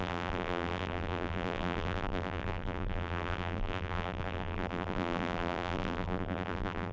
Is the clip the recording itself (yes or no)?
no